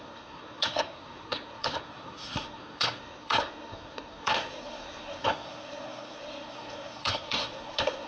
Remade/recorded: remade